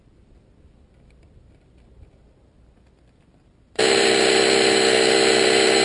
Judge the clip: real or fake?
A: fake